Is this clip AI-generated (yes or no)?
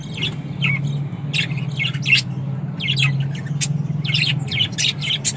no